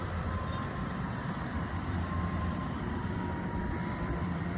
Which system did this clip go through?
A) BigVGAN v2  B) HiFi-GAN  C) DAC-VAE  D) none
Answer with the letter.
A